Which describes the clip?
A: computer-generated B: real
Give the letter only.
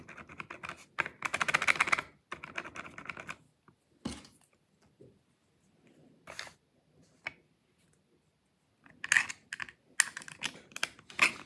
B